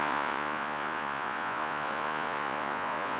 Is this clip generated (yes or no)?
yes